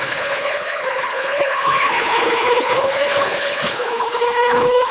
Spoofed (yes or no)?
yes